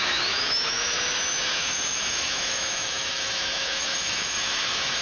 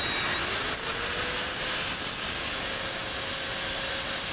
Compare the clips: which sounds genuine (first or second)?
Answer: second